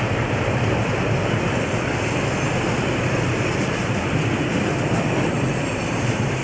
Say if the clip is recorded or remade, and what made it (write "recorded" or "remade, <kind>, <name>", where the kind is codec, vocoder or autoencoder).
remade, vocoder, BigVGAN v2